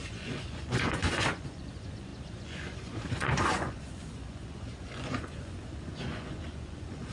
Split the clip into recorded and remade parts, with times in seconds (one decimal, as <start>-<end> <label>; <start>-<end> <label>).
0.0-7.1 remade